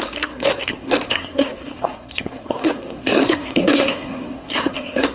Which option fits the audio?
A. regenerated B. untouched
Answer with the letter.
A